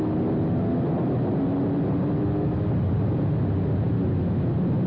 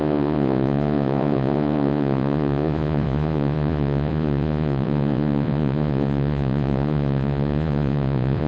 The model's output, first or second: second